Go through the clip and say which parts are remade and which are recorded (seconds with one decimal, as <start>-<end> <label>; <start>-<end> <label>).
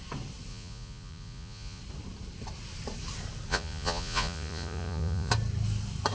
0.0-0.5 recorded; 0.5-1.8 remade; 1.8-3.5 recorded; 3.5-5.3 remade; 5.3-6.1 recorded